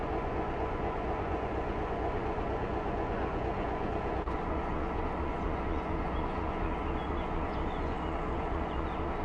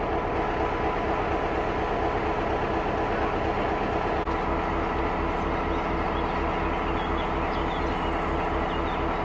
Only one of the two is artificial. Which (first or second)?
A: first